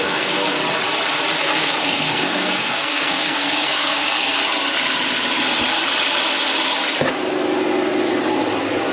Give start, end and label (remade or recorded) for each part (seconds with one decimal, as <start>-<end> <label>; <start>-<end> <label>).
0.0-0.6 remade; 0.6-1.4 recorded; 1.4-4.4 remade; 4.4-8.9 recorded